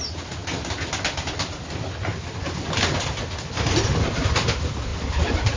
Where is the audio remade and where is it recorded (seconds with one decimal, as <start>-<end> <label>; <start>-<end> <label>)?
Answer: 0.0-0.4 remade; 0.4-3.8 recorded; 3.8-4.9 remade; 4.9-5.6 recorded